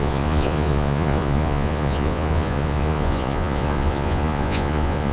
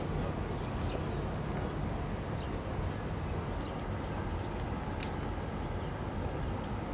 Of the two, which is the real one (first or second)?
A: second